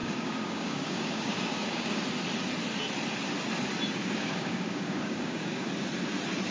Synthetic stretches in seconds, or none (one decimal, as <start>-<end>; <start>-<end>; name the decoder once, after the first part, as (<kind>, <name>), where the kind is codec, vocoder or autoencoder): 0.0-2.0 (codec, DAC); 4.0-5.7